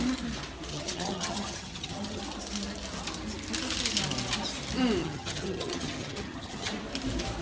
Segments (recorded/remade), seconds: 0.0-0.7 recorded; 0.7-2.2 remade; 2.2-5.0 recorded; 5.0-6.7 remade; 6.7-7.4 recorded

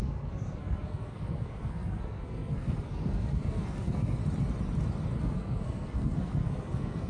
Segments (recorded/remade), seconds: 0.0-4.2 remade; 4.2-5.2 recorded; 5.2-7.1 remade